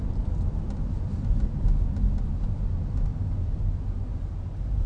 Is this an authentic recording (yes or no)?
yes